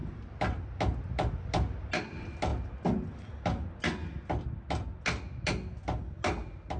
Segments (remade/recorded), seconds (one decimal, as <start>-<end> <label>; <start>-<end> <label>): 0.0-6.8 recorded